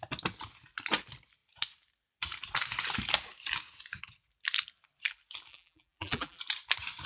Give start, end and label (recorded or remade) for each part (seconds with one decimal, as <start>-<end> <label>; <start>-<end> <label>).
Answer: 0.0-5.5 recorded; 5.5-6.4 remade; 6.4-7.1 recorded